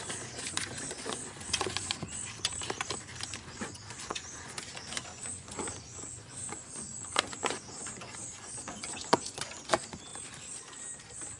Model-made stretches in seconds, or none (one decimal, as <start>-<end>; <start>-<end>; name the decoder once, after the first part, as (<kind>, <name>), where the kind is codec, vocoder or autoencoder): 0.0-2.2 (vocoder, Vocos); 3.0-10.1